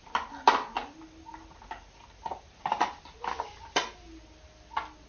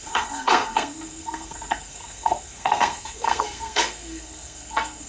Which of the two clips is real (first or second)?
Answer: first